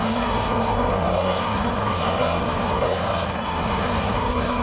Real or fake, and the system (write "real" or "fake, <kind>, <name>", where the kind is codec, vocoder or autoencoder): fake, codec, SNAC